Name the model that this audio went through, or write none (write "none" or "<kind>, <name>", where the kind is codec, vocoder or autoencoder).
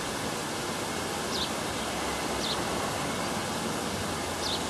none